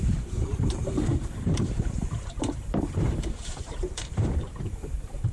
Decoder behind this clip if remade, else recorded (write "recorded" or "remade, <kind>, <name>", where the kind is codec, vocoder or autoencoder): remade, vocoder, BigVGAN v2